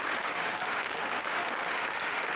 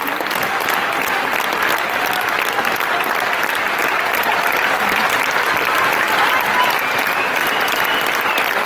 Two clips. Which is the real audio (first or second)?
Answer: second